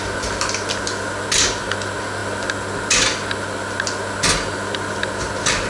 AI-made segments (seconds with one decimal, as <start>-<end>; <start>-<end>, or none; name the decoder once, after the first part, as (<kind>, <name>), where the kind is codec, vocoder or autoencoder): none